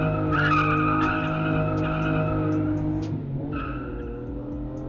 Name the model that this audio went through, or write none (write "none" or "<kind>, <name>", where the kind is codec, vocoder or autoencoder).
none